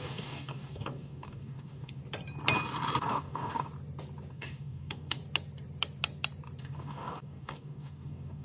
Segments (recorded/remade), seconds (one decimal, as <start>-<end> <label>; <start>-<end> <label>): 0.0-2.0 remade; 2.0-3.1 recorded; 3.1-3.7 remade; 3.7-4.3 recorded; 4.3-5.2 remade; 5.2-6.6 recorded; 6.6-8.4 remade